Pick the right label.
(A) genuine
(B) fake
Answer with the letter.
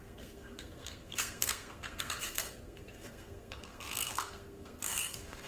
B